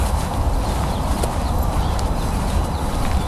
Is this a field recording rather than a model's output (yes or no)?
yes